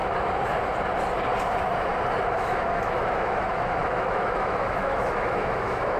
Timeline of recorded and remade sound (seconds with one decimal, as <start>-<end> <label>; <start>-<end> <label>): 0.0-2.3 recorded; 2.3-6.0 remade